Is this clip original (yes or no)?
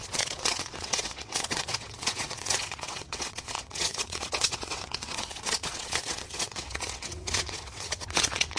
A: no